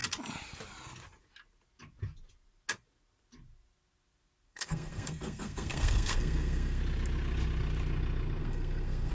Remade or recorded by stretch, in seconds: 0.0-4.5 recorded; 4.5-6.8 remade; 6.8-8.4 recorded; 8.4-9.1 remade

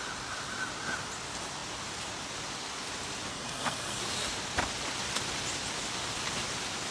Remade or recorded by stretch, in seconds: 0.0-3.3 recorded; 3.3-4.0 remade; 4.0-6.9 recorded

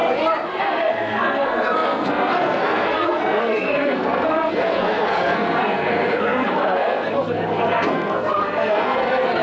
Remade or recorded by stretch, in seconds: 0.0-0.6 recorded; 0.6-9.4 remade

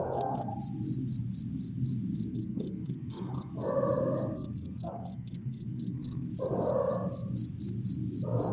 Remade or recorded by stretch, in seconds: 0.0-0.5 remade; 0.5-2.3 recorded; 2.3-3.5 remade; 3.5-4.3 recorded; 4.3-6.3 remade; 6.3-8.5 recorded

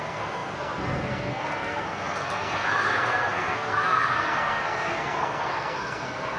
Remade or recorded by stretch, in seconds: 0.0-6.4 remade

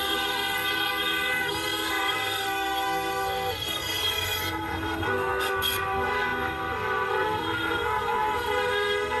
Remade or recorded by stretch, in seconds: 0.0-9.2 remade